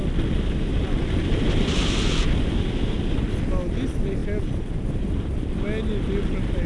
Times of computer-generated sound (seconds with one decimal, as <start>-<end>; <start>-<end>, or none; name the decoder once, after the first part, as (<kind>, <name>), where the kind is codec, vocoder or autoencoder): none